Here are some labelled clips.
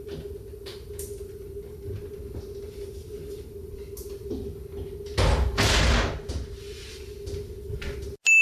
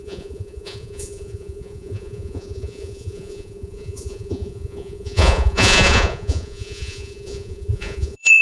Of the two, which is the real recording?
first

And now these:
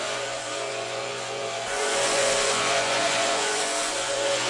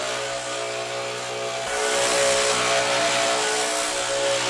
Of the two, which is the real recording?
second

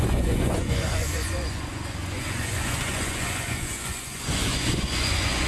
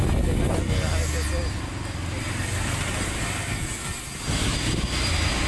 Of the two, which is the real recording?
second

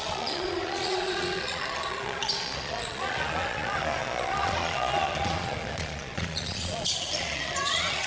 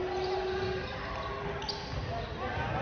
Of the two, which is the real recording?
second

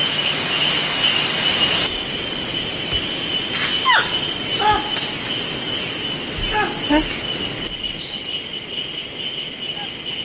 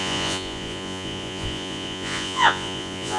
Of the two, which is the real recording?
first